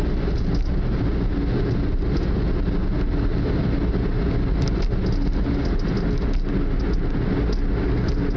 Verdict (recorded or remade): recorded